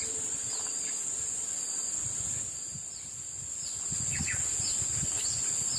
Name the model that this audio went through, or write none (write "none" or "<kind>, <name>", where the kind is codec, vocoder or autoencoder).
none